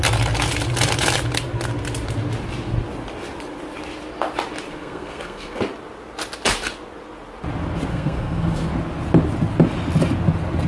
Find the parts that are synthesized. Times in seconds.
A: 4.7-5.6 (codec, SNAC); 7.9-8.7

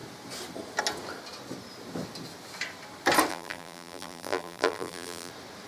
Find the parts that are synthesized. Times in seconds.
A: 3.3-5.3 (vocoder, BigVGAN v2)

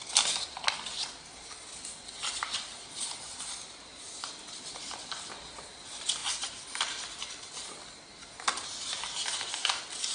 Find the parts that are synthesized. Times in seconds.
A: none

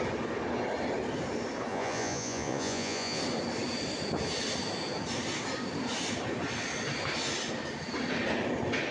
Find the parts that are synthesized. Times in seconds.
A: 1.7-3.2 (vocoder, Vocos)

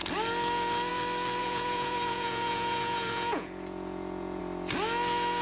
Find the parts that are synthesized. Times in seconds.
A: 1.4-4.4 (vocoder, Vocos)